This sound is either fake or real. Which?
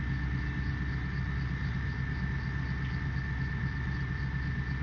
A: real